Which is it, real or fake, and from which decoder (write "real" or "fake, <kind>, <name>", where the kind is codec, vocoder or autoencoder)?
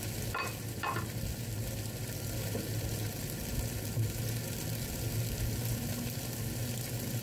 real